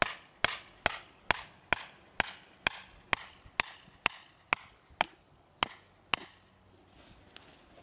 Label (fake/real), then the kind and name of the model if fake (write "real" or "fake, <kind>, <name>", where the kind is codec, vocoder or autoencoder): real